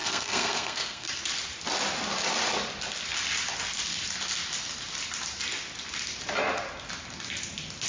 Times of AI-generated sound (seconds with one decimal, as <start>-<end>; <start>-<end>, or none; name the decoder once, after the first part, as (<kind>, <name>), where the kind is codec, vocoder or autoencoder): 0.0-1.2 (codec, SNAC)